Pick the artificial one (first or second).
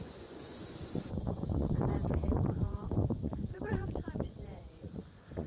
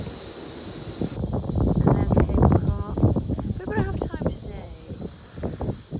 first